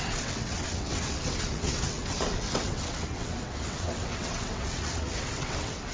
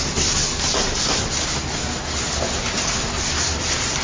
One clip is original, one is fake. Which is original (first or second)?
second